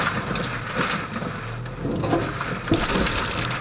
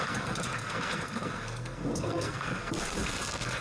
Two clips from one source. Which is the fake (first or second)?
second